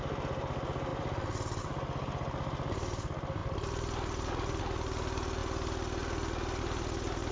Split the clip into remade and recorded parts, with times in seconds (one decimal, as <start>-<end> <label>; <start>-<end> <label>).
0.0-0.9 recorded; 0.9-1.6 remade; 1.6-3.4 recorded; 3.4-4.6 remade; 4.6-7.3 recorded